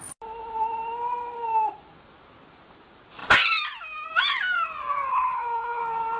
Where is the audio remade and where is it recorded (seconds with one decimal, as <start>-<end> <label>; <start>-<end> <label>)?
0.0-5.1 recorded; 5.1-5.8 remade; 5.8-6.2 recorded